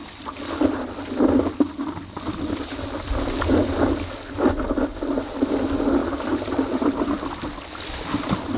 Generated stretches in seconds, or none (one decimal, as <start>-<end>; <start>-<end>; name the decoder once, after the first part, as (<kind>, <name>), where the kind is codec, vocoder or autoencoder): 0.0-3.4 (vocoder, BigVGAN v2); 6.0-8.6